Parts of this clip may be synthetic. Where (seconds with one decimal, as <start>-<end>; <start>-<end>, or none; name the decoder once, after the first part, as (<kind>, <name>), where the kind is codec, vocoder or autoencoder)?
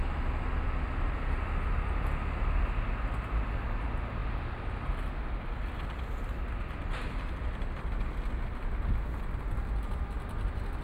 none